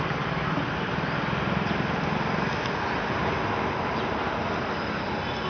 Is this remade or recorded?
recorded